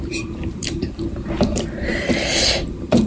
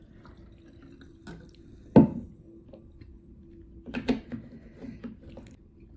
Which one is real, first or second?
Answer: second